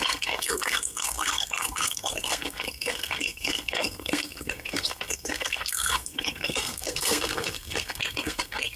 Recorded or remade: remade